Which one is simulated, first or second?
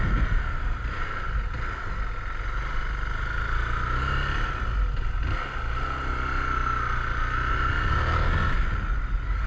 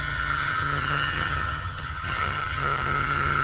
second